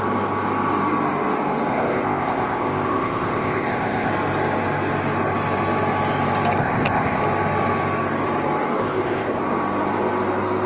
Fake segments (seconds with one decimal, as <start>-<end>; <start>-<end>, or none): 1.7-4.1; 6.6-7.2; 8.8-9.4